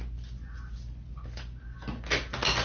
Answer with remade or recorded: recorded